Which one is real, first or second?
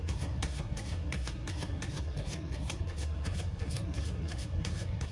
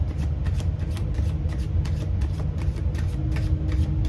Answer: second